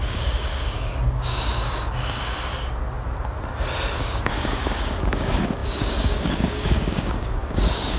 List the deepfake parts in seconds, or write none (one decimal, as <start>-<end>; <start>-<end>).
0.0-2.5; 4.0-8.0

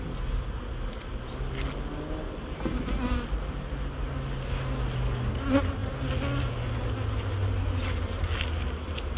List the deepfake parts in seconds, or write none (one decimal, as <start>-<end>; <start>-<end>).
none

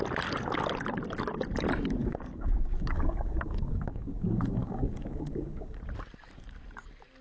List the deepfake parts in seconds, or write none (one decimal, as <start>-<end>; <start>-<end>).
2.0-5.8